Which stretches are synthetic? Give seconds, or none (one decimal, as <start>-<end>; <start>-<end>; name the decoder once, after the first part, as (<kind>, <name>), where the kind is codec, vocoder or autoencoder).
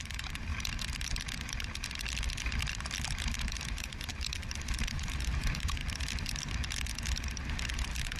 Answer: 0.0-0.5 (vocoder, BigVGAN v2); 3.4-4.1; 4.9-5.8; 7.7-8.2